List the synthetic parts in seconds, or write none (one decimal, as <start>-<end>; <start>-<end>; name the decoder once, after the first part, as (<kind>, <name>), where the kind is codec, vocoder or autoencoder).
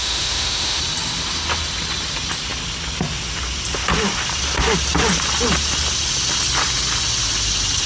0.0-0.8 (autoencoder, DAC-VAE)